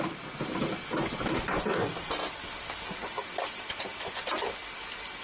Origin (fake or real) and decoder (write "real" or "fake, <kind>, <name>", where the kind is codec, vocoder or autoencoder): real